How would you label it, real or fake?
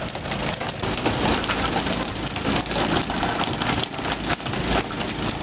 real